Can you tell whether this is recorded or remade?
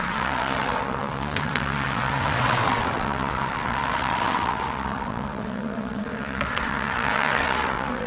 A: remade